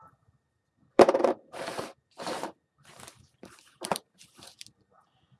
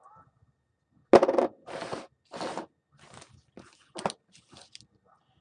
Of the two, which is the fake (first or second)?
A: first